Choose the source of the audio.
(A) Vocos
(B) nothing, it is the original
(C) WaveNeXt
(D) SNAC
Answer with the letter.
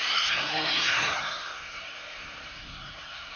D